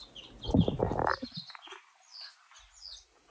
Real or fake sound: real